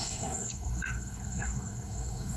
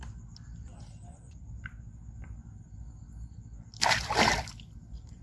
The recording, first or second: second